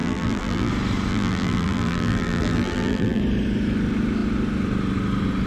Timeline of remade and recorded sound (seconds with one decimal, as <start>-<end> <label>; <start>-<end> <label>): 0.0-0.7 remade; 0.7-1.1 recorded; 1.1-3.2 remade; 3.2-5.5 recorded